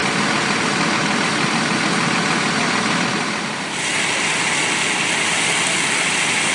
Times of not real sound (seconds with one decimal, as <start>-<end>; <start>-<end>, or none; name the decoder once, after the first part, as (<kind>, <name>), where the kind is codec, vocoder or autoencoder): none